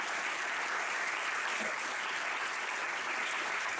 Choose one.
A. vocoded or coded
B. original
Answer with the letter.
B